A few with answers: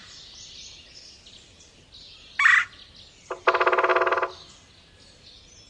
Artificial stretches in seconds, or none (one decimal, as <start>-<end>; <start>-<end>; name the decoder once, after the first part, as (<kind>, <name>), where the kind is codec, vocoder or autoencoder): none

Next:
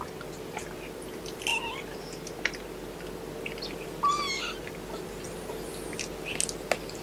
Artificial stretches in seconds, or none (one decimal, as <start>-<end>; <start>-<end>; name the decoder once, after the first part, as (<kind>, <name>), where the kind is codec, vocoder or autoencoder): none

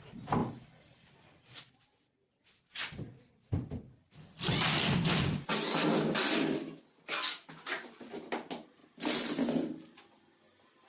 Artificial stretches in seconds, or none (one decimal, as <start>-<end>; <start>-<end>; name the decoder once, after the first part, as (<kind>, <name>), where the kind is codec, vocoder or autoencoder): 5.5-7.9 (vocoder, BigVGAN v2); 8.8-10.2

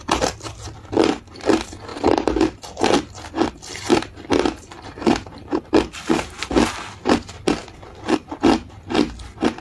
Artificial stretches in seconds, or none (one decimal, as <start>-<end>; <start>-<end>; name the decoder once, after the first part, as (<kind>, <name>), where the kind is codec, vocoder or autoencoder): 7.6-8.7 (vocoder, BigVGAN v2)

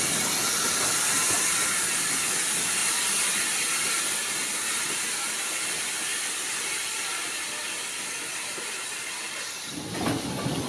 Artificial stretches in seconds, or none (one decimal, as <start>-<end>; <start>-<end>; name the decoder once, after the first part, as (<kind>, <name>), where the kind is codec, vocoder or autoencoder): 2.8-4.0 (vocoder, BigVGAN v2); 6.1-9.8

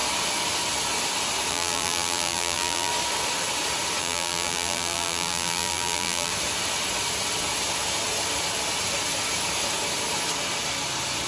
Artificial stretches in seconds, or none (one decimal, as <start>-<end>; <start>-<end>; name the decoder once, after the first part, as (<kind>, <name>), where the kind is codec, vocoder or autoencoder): 1.5-2.9 (vocoder, BigVGAN v2); 4.0-6.3

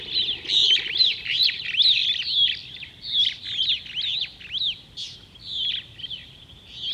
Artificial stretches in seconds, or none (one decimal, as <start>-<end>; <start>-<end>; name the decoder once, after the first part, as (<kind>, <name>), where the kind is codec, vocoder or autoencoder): 0.6-1.6 (vocoder, BigVGAN v2)